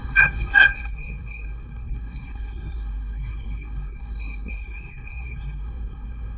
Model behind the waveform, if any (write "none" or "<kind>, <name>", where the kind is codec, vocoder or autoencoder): codec, SNAC